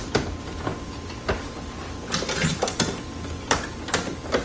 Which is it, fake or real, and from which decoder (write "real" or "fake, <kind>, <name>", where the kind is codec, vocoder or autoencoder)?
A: real